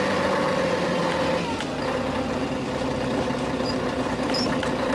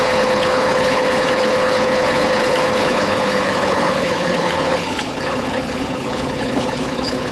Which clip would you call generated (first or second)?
second